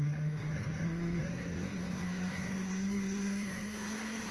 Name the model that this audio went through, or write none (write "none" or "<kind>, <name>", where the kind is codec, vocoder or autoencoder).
codec, SNAC